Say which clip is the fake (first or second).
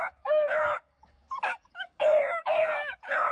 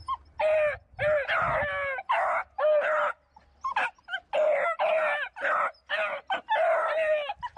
first